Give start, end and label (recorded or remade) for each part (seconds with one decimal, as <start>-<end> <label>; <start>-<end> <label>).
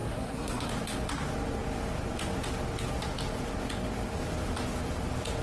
0.0-0.7 remade; 0.7-5.4 recorded